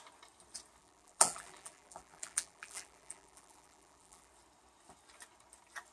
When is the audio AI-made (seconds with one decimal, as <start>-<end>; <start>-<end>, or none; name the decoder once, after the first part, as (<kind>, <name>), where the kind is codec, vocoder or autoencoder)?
0.8-4.3 (vocoder, BigVGAN v2)